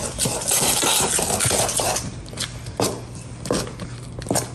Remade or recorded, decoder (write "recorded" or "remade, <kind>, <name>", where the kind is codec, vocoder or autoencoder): recorded